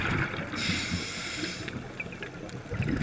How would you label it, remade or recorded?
recorded